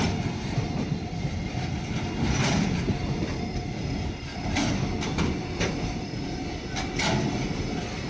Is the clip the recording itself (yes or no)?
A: yes